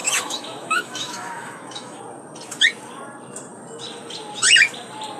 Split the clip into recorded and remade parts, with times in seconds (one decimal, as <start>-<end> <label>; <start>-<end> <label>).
0.0-2.0 remade; 2.0-5.2 recorded